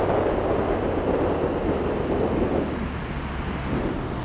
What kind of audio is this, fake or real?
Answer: real